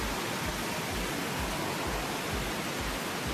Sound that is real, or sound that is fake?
real